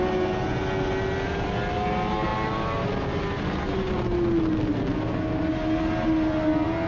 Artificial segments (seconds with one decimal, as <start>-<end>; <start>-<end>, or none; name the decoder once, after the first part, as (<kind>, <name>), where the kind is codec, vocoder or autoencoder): none